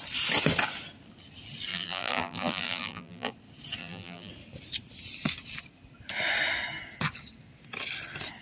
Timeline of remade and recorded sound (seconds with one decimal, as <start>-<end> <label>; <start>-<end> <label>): 0.0-1.7 recorded; 1.7-3.3 remade; 3.3-3.8 recorded; 3.8-4.3 remade; 4.3-8.4 recorded